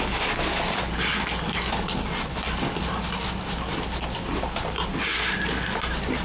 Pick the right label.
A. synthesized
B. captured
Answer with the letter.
B